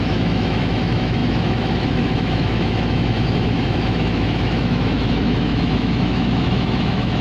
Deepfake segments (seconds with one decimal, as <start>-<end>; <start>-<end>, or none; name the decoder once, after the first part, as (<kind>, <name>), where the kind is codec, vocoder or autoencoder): 0.0-7.2 (autoencoder, DAC-VAE)